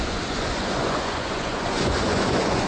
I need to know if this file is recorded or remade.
remade